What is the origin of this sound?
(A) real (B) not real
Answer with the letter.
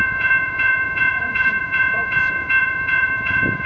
B